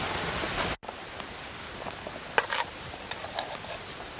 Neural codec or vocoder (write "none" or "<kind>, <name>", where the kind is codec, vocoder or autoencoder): none